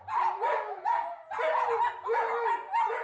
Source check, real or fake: real